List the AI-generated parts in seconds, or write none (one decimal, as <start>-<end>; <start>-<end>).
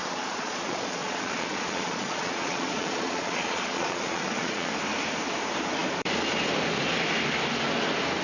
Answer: 0.0-4.7